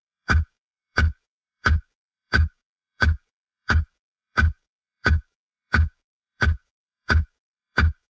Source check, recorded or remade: remade